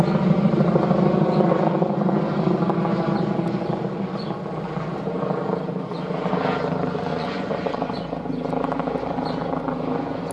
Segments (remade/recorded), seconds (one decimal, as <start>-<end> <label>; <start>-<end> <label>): 0.0-7.1 recorded; 7.1-8.2 remade; 8.2-10.3 recorded